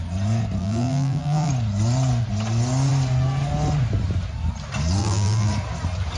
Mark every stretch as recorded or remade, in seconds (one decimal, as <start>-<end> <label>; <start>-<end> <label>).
0.0-0.6 recorded; 0.6-1.5 remade; 1.5-5.0 recorded; 5.0-5.5 remade; 5.5-6.2 recorded